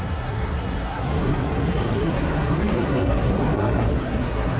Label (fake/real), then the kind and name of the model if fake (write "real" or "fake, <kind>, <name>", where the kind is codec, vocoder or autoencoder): fake, codec, SNAC